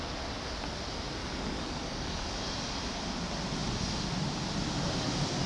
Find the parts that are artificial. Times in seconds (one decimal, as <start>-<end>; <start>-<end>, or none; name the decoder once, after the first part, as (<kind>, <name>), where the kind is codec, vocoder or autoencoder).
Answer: 1.2-2.4 (codec, DAC)